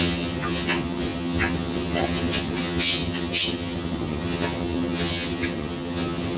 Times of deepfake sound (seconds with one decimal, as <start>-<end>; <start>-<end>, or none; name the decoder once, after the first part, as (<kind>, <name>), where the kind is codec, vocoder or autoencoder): 0.0-6.4 (vocoder, HiFi-GAN)